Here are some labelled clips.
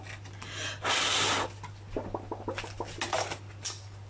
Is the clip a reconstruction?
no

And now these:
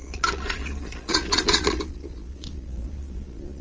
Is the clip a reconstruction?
yes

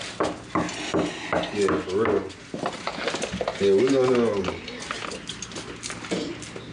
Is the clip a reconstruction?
no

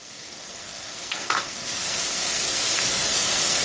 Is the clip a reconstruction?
yes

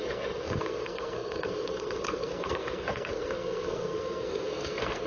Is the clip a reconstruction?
yes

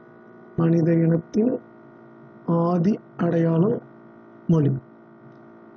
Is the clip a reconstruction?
no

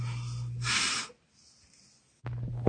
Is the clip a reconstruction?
no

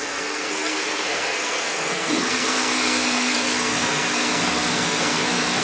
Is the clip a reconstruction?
yes